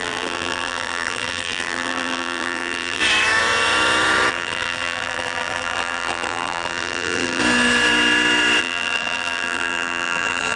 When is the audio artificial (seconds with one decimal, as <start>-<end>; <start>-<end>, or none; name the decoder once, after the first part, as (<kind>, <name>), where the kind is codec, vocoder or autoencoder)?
0.0-3.0 (vocoder, BigVGAN v2); 4.3-7.4; 8.6-10.6

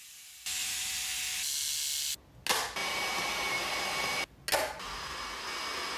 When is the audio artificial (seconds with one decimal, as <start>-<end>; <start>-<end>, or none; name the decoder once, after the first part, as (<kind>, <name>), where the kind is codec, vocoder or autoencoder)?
0.6-1.1 (vocoder, BigVGAN v2); 2.8-4.2